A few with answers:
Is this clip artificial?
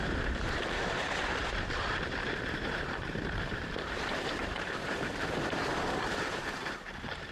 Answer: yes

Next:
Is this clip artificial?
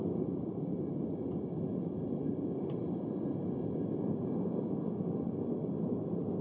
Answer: no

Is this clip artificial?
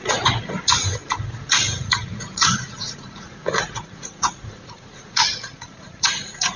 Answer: yes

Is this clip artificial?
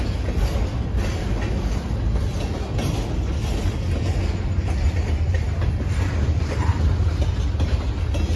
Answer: no